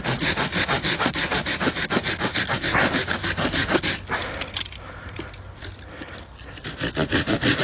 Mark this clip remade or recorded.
recorded